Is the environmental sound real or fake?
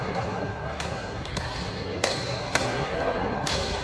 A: fake